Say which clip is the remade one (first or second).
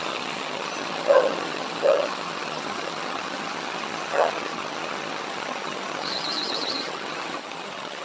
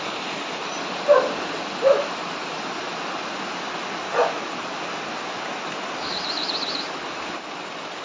first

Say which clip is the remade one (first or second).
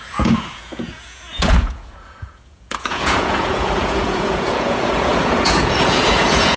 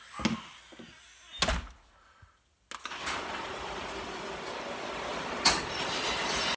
first